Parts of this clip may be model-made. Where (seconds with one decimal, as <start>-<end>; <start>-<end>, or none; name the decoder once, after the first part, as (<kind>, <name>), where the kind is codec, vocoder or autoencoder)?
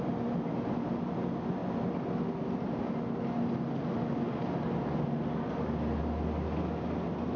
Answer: none